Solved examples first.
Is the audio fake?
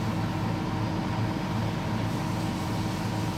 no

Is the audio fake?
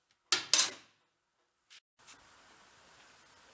no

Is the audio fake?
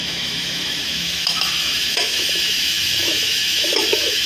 yes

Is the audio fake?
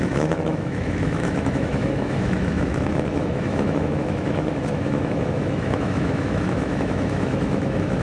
yes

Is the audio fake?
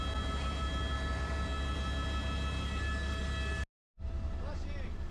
no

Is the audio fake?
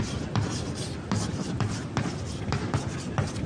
no